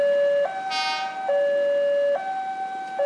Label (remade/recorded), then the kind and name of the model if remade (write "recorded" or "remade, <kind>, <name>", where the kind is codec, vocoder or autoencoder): recorded